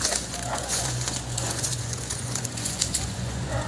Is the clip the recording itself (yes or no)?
no